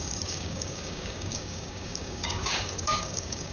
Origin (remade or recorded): remade